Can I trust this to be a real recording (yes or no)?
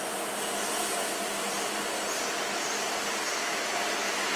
yes